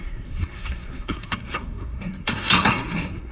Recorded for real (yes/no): no